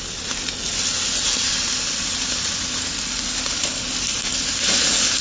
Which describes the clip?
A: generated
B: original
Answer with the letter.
B